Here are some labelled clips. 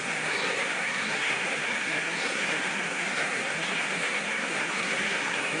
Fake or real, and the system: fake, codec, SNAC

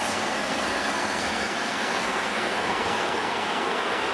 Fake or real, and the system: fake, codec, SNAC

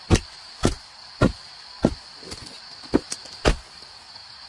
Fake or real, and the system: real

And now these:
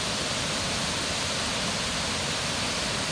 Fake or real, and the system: real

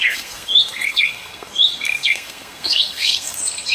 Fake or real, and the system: fake, codec, SNAC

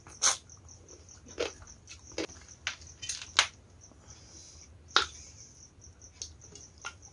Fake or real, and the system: real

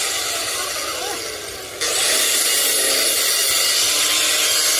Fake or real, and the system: real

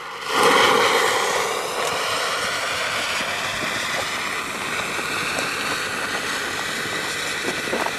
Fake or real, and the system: real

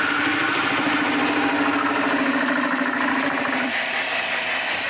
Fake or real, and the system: real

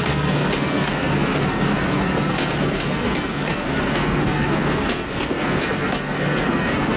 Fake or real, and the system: fake, codec, SNAC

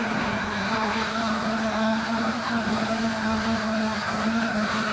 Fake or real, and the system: fake, codec, SNAC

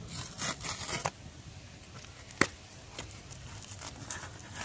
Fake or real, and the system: real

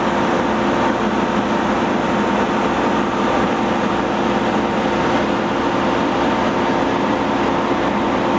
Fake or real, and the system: real